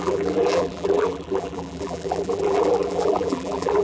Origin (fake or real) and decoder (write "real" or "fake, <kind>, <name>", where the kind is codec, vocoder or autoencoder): fake, vocoder, BigVGAN v2